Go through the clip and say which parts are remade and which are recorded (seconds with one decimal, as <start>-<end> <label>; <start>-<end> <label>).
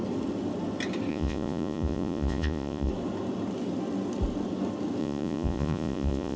0.0-1.1 recorded; 1.1-2.9 remade; 2.9-5.0 recorded; 5.0-6.4 remade